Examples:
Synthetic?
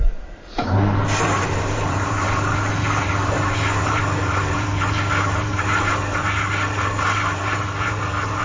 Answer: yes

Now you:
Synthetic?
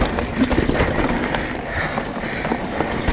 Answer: no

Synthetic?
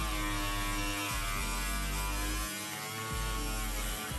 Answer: no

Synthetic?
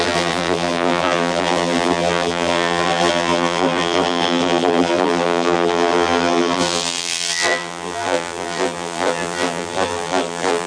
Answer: yes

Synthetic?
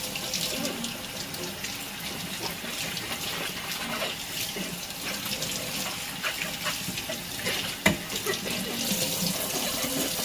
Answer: no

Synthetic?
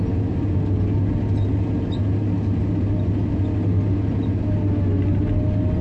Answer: no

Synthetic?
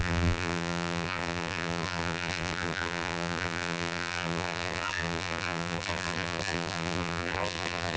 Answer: yes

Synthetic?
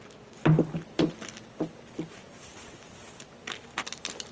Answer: no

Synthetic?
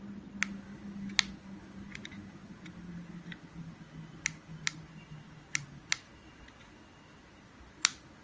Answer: no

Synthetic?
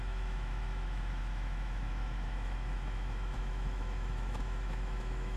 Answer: yes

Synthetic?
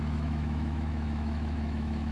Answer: yes